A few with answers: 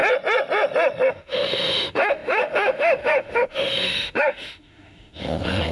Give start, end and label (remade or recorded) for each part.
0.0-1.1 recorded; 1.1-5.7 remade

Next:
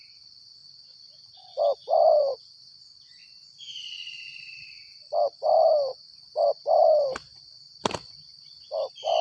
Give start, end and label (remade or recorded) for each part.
0.0-9.2 recorded

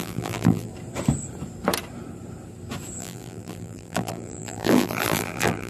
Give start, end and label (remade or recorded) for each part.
0.0-0.7 remade; 0.7-3.0 recorded; 3.0-5.7 remade

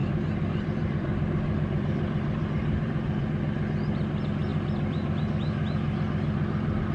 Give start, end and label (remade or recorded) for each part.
0.0-3.3 remade; 3.3-4.5 recorded; 4.5-5.3 remade; 5.3-6.9 recorded

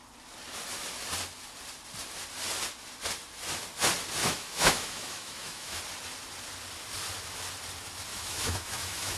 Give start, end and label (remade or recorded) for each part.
0.0-4.2 recorded; 4.2-5.8 remade; 5.8-8.1 recorded; 8.1-9.2 remade

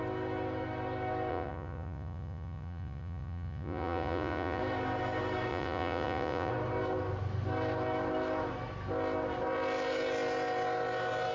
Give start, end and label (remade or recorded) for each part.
0.0-1.3 recorded; 1.3-4.6 remade; 4.6-5.5 recorded; 5.5-6.5 remade; 6.5-11.3 recorded

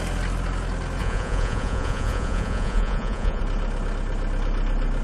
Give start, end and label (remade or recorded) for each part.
0.0-1.0 recorded; 1.0-3.4 remade; 3.4-5.0 recorded